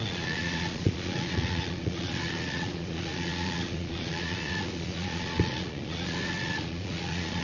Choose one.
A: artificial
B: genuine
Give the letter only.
A